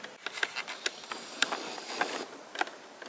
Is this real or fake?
real